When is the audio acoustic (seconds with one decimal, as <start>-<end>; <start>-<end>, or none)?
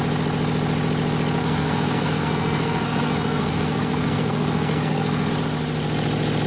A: 0.0-1.4; 5.3-6.5